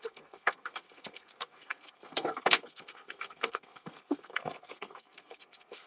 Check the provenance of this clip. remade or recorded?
remade